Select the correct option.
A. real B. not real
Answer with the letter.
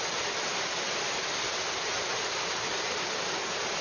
A